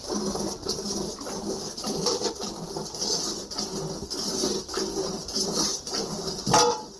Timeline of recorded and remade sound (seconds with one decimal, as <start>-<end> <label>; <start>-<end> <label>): 0.0-7.0 recorded